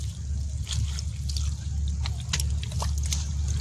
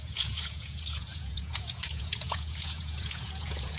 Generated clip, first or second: second